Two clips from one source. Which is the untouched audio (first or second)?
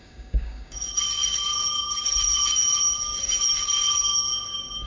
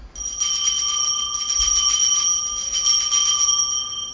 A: second